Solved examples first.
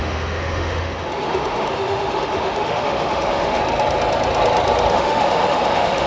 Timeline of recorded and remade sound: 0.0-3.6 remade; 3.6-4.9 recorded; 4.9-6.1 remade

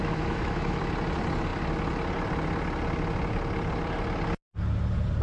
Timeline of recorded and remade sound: 0.0-0.8 remade; 0.8-5.2 recorded

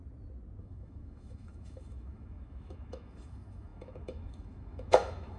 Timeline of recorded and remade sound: 0.0-0.6 recorded; 0.6-5.4 remade

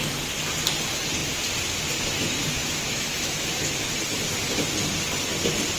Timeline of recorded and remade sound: 0.0-2.6 recorded; 2.6-3.9 remade; 3.9-5.8 recorded